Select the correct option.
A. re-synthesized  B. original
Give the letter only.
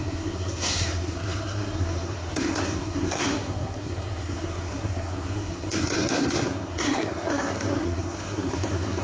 A